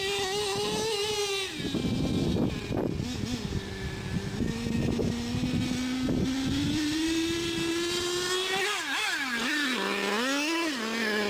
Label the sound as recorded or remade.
recorded